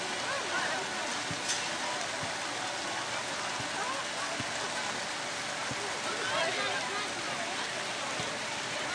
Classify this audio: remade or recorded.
recorded